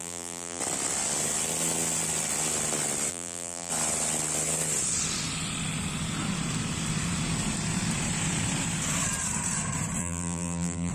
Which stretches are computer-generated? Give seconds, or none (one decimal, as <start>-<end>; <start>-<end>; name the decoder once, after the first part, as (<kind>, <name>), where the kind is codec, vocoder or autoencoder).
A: 0.0-0.6 (vocoder, BigVGAN v2); 3.1-3.7; 10.0-10.9